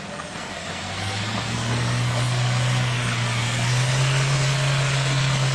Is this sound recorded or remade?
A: remade